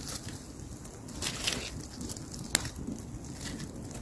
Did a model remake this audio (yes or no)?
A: no